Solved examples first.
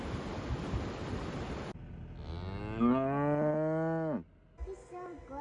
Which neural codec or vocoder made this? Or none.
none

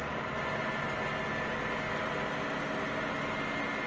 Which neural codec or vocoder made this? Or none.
none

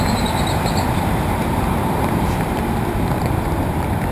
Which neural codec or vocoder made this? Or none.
vocoder, BigVGAN v2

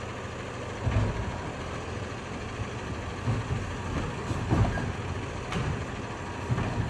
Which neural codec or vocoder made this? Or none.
none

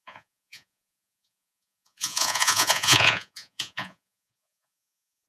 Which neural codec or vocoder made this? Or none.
vocoder, Vocos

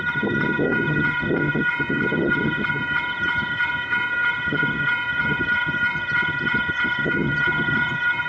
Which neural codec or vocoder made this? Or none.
vocoder, HiFi-GAN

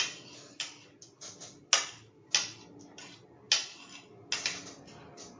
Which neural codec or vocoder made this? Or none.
none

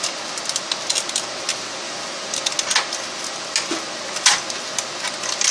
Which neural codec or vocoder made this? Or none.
none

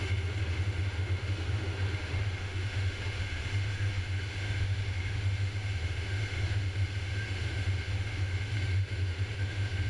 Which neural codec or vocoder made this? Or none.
autoencoder, DAC-VAE